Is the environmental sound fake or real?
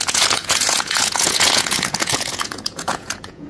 fake